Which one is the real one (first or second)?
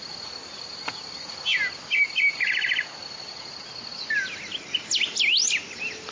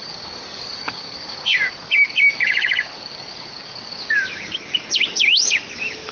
first